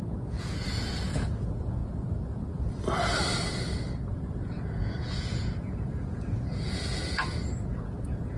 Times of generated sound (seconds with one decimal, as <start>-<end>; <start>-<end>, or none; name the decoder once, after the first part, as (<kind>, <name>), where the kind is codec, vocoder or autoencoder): 0.0-1.8 (vocoder, Vocos); 4.1-8.4